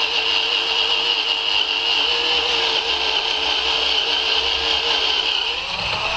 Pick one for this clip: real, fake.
real